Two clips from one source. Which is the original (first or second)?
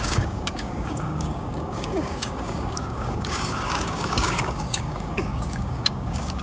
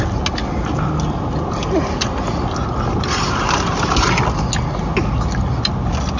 second